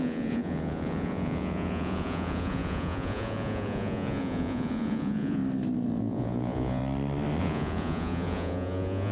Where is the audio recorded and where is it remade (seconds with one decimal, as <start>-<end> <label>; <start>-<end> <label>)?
0.0-5.4 remade; 5.4-6.0 recorded; 6.0-6.8 remade; 6.8-7.4 recorded; 7.4-9.1 remade